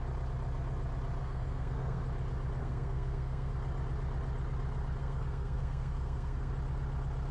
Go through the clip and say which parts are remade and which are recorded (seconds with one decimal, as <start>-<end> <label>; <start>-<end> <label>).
0.0-1.2 recorded; 1.2-2.0 remade; 2.0-2.6 recorded; 2.6-3.5 remade; 3.5-5.0 recorded; 5.0-6.5 remade; 6.5-7.3 recorded